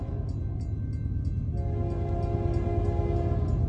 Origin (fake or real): real